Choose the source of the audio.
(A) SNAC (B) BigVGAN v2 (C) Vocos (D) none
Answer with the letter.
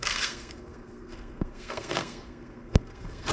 A